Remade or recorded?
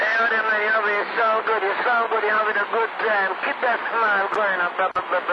recorded